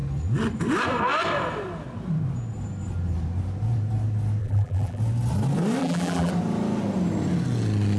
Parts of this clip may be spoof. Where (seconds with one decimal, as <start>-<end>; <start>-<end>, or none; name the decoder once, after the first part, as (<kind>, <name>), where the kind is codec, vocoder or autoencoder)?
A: 4.4-5.0 (vocoder, BigVGAN v2); 5.8-6.3